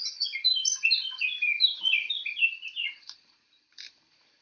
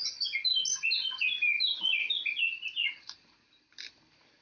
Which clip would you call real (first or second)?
second